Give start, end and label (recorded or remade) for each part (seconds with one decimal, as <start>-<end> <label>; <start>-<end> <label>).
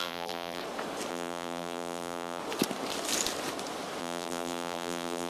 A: 0.0-0.6 remade; 0.6-1.1 recorded; 1.1-2.4 remade; 2.4-4.0 recorded; 4.0-5.3 remade